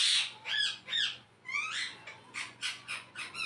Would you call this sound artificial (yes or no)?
yes